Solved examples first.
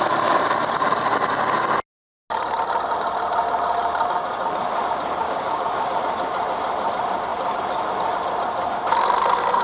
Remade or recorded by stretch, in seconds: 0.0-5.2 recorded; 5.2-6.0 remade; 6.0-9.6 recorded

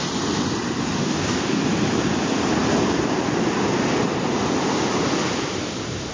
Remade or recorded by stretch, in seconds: 0.0-1.0 recorded; 1.0-1.6 remade; 1.6-6.1 recorded